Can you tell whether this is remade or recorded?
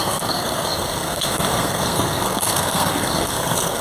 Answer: remade